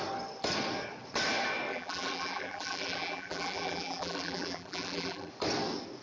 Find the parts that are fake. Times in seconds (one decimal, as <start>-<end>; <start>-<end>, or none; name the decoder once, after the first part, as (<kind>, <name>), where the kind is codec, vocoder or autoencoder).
1.7-5.3 (vocoder, BigVGAN v2)